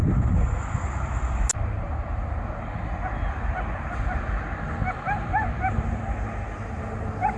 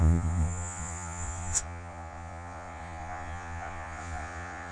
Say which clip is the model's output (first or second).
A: second